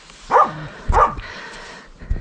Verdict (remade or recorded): recorded